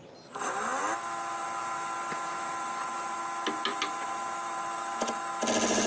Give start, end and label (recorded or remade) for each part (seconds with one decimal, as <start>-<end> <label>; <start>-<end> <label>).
0.0-1.4 recorded; 1.4-3.2 remade; 3.2-3.7 recorded; 3.7-5.2 remade; 5.2-5.9 recorded